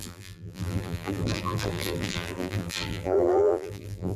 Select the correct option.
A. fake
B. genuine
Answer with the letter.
A